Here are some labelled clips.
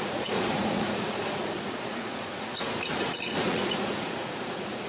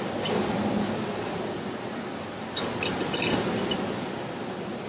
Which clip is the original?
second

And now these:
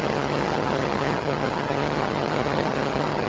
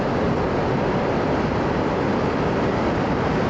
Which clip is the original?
second